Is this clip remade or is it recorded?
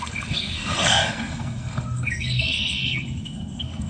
remade